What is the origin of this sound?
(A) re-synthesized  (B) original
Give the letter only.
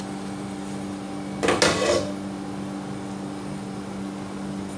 B